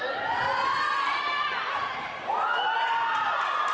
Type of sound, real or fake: real